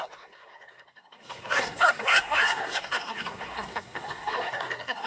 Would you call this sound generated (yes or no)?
yes